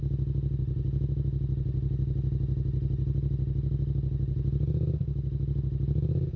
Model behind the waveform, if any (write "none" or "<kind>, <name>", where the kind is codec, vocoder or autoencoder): none